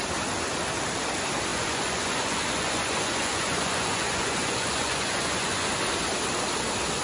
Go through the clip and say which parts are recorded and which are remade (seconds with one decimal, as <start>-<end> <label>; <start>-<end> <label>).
0.0-1.5 recorded; 1.5-5.7 remade; 5.7-7.0 recorded